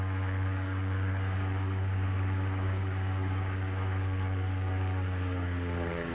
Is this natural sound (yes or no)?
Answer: no